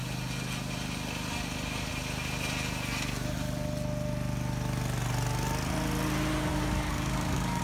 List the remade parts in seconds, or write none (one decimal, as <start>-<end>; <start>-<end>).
6.5-7.6